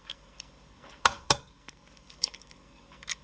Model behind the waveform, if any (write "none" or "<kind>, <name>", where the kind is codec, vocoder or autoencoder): codec, SNAC